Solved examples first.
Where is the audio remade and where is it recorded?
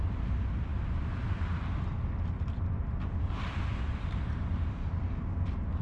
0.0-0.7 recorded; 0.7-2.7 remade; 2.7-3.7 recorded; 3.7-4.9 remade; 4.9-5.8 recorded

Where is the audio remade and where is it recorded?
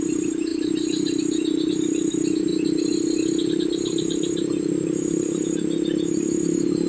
0.0-2.5 remade; 2.5-3.5 recorded; 3.5-6.9 remade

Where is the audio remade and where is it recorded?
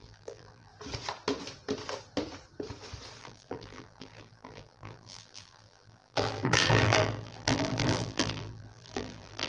0.0-0.7 remade; 0.7-3.2 recorded; 3.2-9.5 remade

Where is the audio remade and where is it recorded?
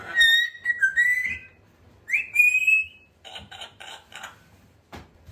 0.0-0.9 recorded; 0.9-2.4 remade; 2.4-2.8 recorded; 2.8-5.3 remade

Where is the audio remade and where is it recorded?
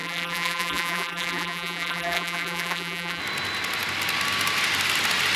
0.0-3.2 remade; 3.2-5.4 recorded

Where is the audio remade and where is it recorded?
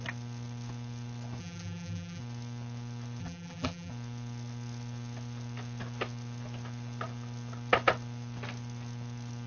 0.0-1.4 recorded; 1.4-2.2 remade; 2.2-3.2 recorded; 3.2-3.9 remade; 3.9-9.5 recorded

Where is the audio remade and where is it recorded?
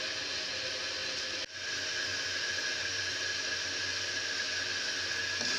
0.0-5.6 recorded